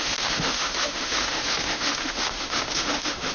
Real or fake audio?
fake